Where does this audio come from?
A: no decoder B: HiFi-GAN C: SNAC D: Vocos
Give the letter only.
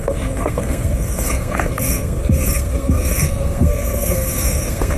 C